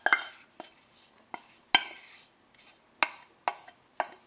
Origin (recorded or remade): recorded